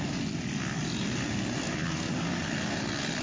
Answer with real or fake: real